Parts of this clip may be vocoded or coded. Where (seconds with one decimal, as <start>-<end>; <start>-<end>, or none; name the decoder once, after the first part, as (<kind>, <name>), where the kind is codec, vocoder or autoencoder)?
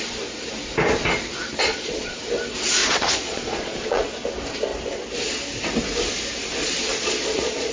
1.7-2.2 (vocoder, Vocos); 2.8-4.1; 6.6-7.7